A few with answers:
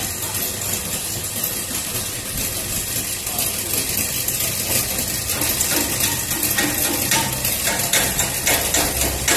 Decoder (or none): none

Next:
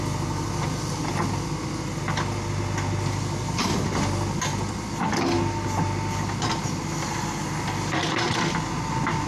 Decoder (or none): none